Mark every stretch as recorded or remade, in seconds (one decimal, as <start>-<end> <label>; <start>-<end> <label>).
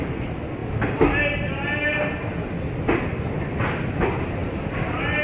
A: 0.0-5.2 recorded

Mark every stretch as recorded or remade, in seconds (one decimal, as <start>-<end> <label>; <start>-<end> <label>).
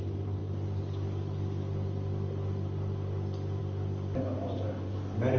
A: 0.0-5.4 recorded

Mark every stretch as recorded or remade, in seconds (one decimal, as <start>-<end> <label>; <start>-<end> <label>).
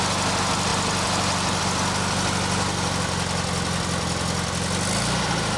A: 0.0-5.6 recorded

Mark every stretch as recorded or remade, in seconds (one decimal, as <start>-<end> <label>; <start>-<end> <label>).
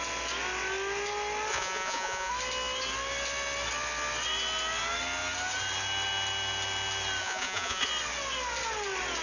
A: 0.0-1.5 recorded; 1.5-2.3 remade; 2.3-7.2 recorded; 7.2-7.9 remade; 7.9-9.2 recorded